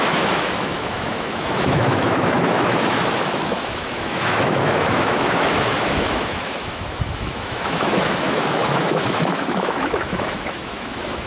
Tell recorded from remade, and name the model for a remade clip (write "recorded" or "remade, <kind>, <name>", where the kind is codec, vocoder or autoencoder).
remade, autoencoder, DAC-VAE